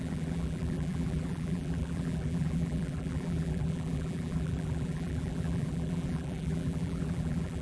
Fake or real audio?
fake